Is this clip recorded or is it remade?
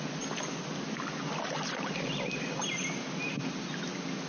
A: recorded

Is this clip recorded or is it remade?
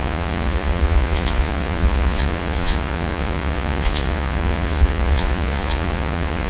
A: remade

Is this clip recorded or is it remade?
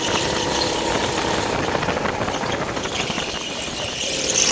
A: recorded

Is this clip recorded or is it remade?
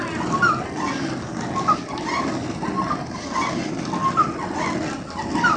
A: recorded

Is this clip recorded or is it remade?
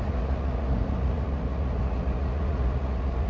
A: remade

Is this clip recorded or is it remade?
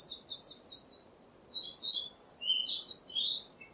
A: recorded